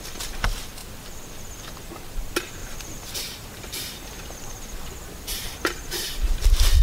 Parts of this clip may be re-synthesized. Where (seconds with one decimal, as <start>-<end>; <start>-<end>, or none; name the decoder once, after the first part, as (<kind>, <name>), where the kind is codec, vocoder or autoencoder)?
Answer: 2.6-6.3 (vocoder, BigVGAN v2)